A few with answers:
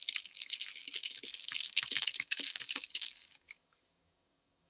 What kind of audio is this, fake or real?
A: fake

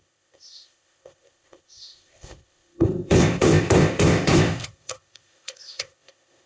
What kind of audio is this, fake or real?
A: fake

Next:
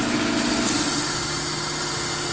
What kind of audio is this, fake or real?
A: real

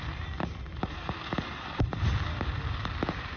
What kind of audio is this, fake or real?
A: fake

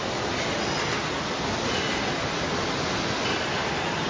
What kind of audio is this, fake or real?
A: real